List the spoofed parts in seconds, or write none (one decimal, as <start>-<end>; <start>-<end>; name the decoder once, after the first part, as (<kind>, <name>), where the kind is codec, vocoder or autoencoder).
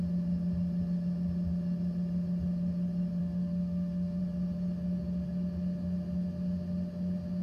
3.2-4.2 (autoencoder, DAC-VAE)